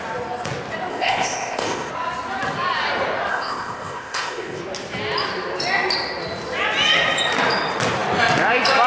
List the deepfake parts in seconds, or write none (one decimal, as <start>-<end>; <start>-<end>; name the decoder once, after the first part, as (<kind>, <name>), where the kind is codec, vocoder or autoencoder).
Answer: 0.9-1.9 (codec, ZipCodec); 3.3-4.6